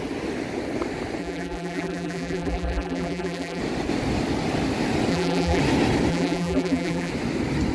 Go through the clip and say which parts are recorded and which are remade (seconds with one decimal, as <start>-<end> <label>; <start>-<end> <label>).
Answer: 0.0-1.2 recorded; 1.2-3.6 remade; 3.6-5.1 recorded; 5.1-5.6 remade; 5.6-6.1 recorded; 6.1-7.1 remade; 7.1-7.7 recorded